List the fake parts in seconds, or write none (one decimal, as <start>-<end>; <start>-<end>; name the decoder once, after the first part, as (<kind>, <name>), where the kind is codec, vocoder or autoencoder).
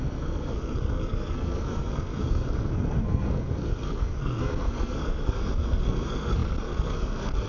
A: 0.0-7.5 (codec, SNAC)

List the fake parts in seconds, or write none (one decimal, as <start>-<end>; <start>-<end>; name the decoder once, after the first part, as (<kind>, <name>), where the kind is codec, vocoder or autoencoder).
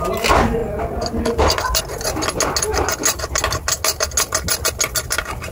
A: none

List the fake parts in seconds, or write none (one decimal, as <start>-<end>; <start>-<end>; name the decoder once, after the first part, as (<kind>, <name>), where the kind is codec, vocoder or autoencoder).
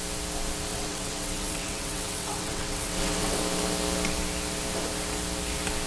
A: 0.7-3.4 (vocoder, WaveNeXt)